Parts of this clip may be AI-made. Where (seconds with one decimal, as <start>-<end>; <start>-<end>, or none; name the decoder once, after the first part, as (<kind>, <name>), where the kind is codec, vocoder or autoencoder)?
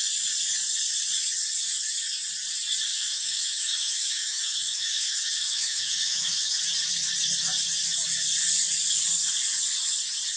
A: 2.9-6.6 (autoencoder, DAC-VAE)